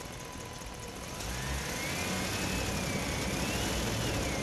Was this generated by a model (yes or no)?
no